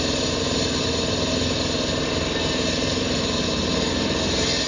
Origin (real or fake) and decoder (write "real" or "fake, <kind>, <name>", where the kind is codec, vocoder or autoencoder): real